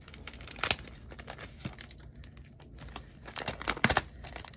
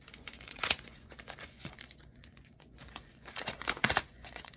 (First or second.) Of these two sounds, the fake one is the second